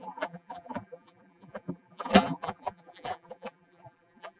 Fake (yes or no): yes